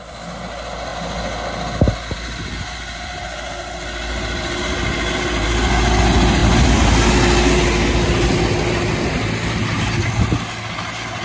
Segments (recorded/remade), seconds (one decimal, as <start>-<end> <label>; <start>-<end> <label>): 0.0-11.2 recorded